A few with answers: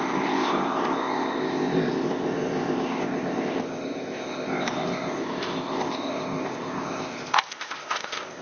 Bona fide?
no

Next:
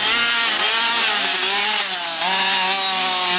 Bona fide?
yes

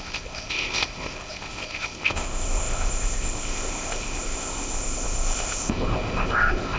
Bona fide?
no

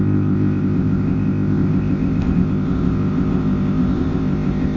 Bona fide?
no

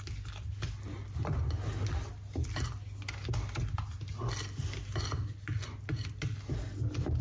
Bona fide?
yes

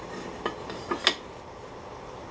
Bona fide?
yes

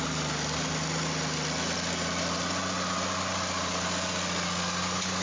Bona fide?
yes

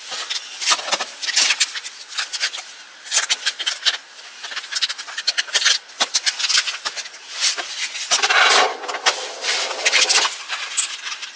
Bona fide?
yes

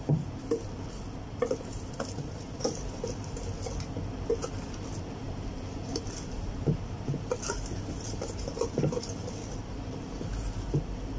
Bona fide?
yes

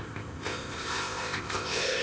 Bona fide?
no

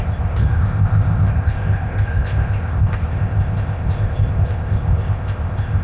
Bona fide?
no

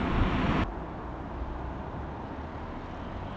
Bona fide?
yes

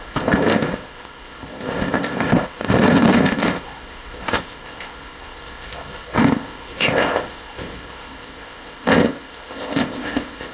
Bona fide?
no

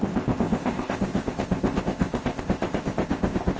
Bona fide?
no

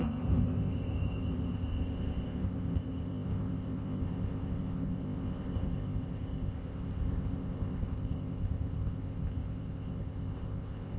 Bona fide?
no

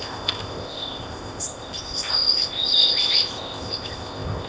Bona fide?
no